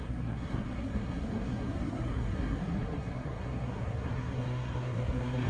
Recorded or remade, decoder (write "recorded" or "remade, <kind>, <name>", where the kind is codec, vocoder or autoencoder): remade, codec, SNAC